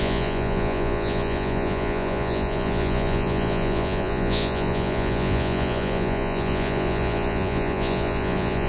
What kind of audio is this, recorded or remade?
remade